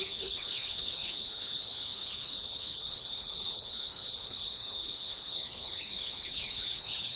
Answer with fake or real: fake